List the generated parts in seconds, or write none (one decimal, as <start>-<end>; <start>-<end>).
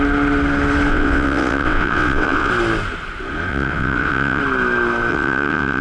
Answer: 0.9-2.5; 3.5-4.4; 5.1-5.8